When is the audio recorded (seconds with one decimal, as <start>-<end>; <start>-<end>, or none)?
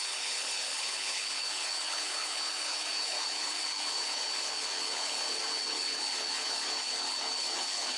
none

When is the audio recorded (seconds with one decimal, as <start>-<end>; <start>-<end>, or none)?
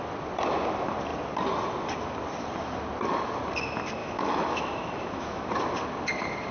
0.0-4.0; 5.5-6.5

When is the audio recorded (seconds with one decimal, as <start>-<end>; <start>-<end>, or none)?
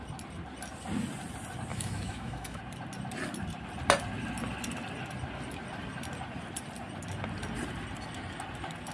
0.0-1.7; 2.6-8.9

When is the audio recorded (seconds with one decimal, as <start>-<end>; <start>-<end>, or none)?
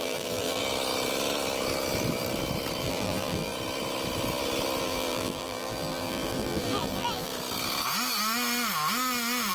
0.6-2.8; 3.5-4.8; 7.3-9.5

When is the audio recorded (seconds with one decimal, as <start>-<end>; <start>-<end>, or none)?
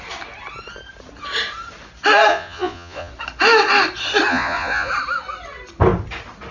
0.0-2.3; 3.1-4.3; 4.9-6.5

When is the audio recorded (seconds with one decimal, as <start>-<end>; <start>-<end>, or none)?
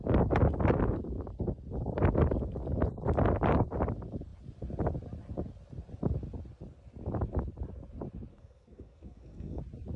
0.0-8.3; 9.6-10.0